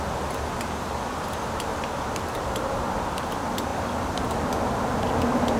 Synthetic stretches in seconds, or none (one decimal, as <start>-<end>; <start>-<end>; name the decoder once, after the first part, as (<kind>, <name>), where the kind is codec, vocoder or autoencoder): 1.7-2.8 (vocoder, BigVGAN v2)